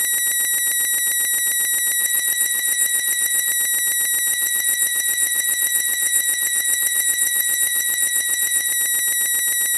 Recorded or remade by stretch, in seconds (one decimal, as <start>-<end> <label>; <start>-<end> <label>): 0.0-2.0 recorded; 2.0-3.5 remade; 3.5-4.3 recorded; 4.3-8.7 remade; 8.7-9.8 recorded